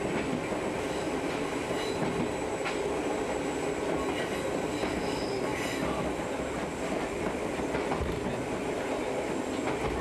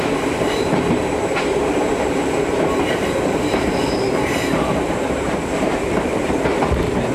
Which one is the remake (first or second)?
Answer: second